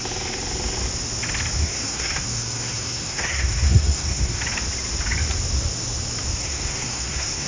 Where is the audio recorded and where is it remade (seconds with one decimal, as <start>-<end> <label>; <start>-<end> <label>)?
0.0-1.6 recorded; 1.6-4.4 remade; 4.4-6.4 recorded; 6.4-7.5 remade